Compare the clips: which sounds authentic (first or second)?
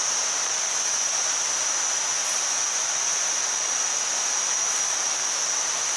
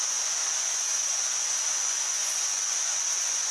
first